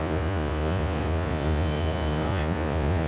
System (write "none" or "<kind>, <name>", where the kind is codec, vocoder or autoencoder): vocoder, Vocos